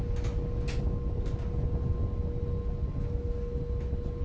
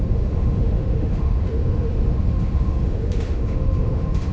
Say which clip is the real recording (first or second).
first